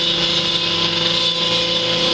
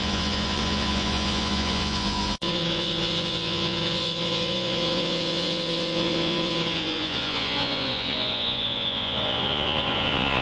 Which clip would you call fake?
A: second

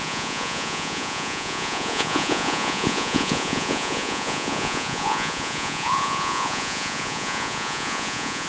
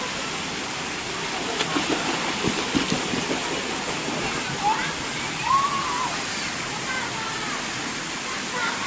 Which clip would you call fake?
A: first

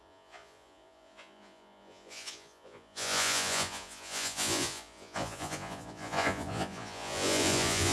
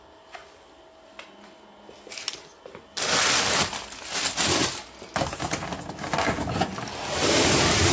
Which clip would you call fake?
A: first